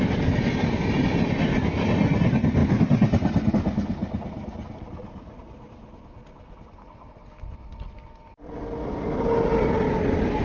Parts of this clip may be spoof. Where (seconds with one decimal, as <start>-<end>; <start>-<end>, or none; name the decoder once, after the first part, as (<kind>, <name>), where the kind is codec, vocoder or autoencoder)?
none